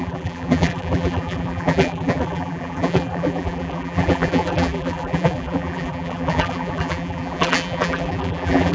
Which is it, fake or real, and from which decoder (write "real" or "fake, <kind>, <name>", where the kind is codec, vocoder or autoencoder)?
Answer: fake, vocoder, BigVGAN v2